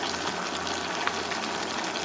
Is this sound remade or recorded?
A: recorded